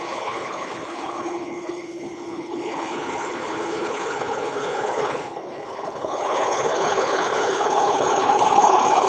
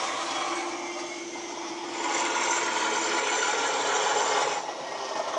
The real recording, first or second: second